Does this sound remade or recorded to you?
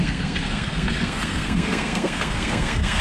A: remade